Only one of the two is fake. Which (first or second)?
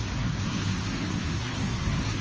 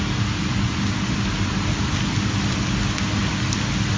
first